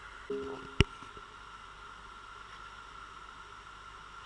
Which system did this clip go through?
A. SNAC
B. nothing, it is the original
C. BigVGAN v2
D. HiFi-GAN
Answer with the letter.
B